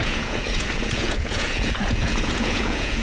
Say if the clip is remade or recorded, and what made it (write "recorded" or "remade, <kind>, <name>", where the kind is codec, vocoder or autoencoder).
remade, vocoder, Vocos